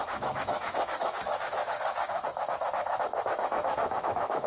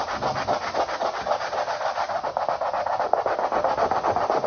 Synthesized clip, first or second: first